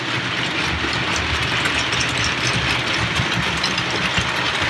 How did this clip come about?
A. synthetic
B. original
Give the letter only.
B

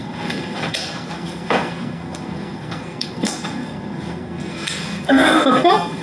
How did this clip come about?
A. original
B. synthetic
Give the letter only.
B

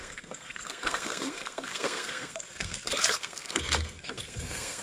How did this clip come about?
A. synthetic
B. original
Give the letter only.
A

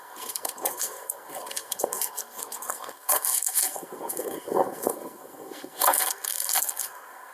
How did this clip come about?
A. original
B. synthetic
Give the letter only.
B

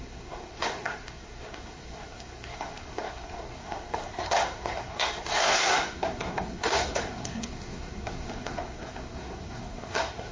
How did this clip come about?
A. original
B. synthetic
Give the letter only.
B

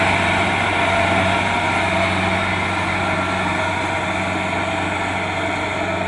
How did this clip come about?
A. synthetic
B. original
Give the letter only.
B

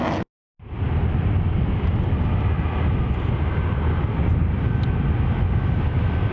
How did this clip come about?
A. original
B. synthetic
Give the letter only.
A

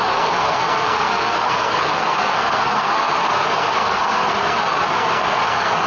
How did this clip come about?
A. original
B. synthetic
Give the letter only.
B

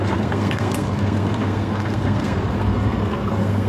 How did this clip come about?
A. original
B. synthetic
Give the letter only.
B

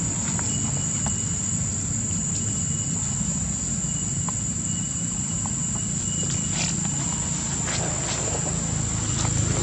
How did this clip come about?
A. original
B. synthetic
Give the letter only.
A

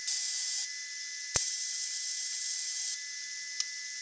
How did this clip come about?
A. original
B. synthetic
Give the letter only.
A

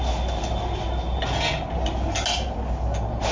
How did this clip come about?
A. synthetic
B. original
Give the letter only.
B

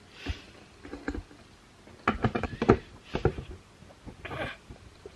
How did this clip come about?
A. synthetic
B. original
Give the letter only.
B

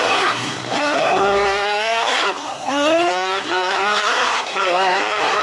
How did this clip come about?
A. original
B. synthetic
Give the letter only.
B